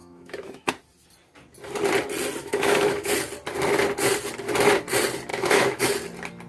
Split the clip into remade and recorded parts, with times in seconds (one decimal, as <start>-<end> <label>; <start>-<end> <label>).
0.0-0.7 remade; 0.7-2.4 recorded; 2.4-3.1 remade; 3.1-5.3 recorded; 5.3-5.8 remade; 5.8-6.5 recorded